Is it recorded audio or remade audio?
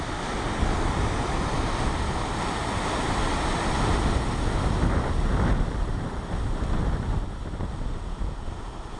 recorded